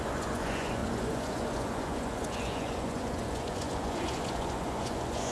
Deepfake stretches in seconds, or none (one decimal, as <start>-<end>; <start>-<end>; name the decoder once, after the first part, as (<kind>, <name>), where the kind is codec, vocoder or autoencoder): 0.0-5.3 (vocoder, Vocos)